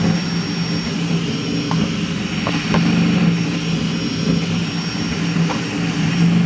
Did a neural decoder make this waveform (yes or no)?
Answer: no